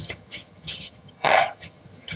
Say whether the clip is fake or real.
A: fake